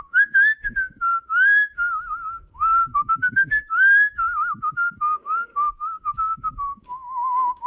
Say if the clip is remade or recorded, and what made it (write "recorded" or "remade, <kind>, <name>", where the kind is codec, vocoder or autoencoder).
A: remade, codec, DAC